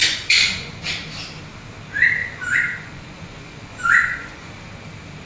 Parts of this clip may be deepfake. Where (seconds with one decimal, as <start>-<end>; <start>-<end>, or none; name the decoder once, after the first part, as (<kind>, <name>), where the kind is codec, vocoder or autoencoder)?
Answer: 0.0-0.8 (vocoder, Vocos); 2.2-4.5